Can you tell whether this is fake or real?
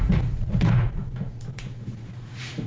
fake